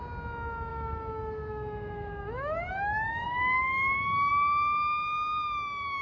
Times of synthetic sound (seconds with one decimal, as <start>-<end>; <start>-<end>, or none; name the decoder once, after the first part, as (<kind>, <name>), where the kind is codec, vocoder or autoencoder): 0.7-4.3 (autoencoder, DAC-VAE)